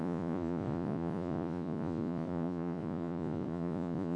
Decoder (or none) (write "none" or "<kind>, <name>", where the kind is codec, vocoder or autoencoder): vocoder, Vocos